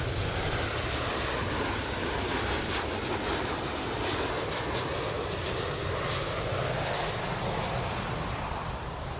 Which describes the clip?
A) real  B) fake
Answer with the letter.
A